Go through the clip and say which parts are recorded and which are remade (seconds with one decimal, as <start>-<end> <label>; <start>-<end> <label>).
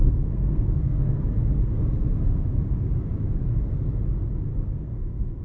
0.0-1.0 remade; 1.0-1.6 recorded; 1.6-2.6 remade; 2.6-4.5 recorded; 4.5-5.4 remade